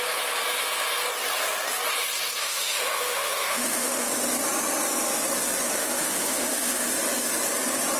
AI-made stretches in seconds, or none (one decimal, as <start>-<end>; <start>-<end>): 2.4-4.1; 5.8-6.9